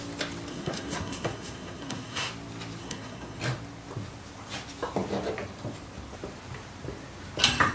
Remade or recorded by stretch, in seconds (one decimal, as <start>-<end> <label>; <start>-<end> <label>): 0.0-0.5 recorded; 0.5-2.3 remade; 2.3-2.8 recorded; 2.8-3.4 remade; 3.4-7.7 recorded